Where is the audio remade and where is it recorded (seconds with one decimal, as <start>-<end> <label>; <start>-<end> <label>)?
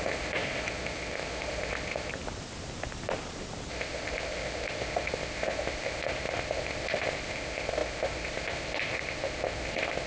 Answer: 0.0-2.1 remade; 2.1-3.7 recorded; 3.7-10.1 remade